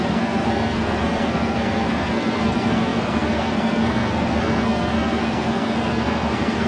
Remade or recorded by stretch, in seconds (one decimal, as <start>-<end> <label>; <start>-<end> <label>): 0.0-6.7 remade